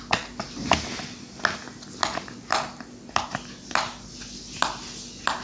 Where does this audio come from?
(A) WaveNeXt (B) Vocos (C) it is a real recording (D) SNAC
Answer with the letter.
C